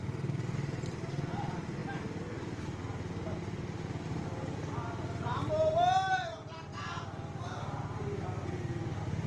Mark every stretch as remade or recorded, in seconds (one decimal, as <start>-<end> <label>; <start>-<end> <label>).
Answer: 0.0-6.7 recorded; 6.7-8.3 remade; 8.3-9.3 recorded